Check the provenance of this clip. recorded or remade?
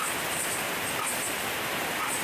recorded